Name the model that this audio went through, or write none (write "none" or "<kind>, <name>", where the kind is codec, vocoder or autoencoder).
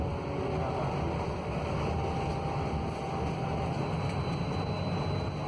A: none